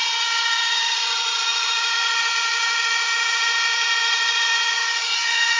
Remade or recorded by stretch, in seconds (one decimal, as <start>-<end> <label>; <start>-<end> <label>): 0.0-5.6 remade